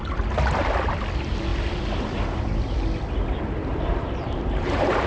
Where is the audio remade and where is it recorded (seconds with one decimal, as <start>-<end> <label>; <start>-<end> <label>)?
0.0-3.9 recorded; 3.9-5.1 remade